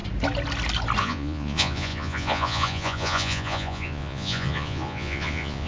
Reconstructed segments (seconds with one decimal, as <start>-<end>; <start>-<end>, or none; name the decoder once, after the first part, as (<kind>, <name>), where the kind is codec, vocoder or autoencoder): 1.0-5.7 (vocoder, Vocos)